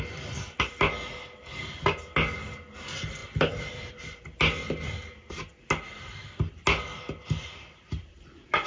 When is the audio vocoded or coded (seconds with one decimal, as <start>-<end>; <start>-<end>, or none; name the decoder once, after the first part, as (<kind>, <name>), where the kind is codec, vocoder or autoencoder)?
none